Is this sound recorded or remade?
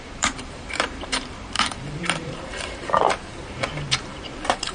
remade